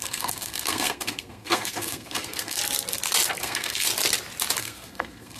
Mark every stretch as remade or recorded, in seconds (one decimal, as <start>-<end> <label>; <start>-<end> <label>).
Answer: 0.0-2.6 remade; 2.6-3.4 recorded; 3.4-3.9 remade; 3.9-4.6 recorded; 4.6-5.4 remade